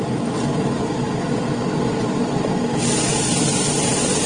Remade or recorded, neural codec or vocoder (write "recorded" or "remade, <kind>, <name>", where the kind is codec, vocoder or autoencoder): recorded